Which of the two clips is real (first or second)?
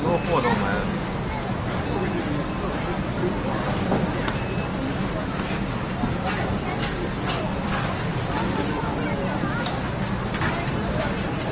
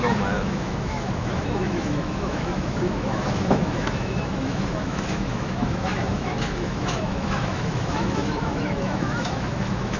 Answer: first